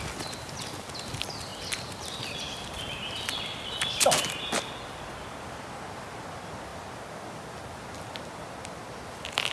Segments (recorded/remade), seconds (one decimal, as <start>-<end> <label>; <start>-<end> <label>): 0.0-9.5 recorded